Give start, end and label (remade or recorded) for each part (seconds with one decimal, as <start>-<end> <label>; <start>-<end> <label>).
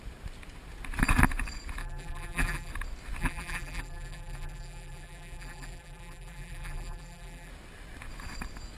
0.0-1.8 recorded; 1.8-2.7 remade; 2.7-3.2 recorded; 3.2-7.5 remade; 7.5-8.8 recorded